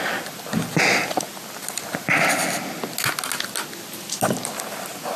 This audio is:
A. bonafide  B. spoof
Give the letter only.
A